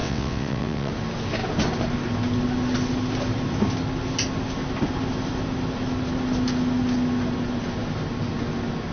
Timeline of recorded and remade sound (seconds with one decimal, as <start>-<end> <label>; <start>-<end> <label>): 0.0-0.9 remade; 0.9-8.9 recorded